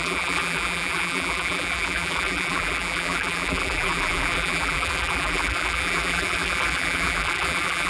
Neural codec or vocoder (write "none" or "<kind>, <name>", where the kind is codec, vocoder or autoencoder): vocoder, BigVGAN v2